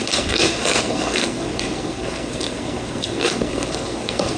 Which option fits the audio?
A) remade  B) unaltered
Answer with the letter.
A